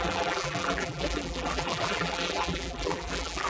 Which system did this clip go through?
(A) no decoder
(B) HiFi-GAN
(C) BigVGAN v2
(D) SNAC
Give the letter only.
C